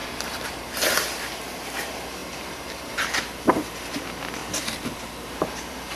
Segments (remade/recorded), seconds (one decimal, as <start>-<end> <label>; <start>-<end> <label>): 0.0-6.0 remade